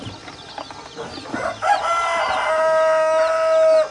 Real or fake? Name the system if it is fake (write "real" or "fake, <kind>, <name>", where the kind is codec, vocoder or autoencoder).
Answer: real